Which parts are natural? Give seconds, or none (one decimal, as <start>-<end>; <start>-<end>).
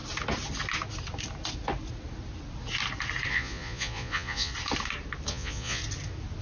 0.0-3.3; 4.5-5.3; 5.8-6.4